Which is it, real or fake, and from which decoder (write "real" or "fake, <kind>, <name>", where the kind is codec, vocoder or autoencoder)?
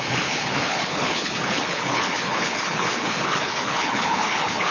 fake, codec, HILCodec